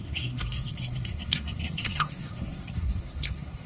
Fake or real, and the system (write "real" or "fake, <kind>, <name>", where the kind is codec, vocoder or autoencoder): fake, codec, SNAC